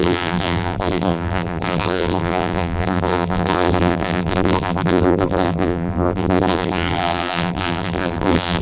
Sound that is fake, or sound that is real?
fake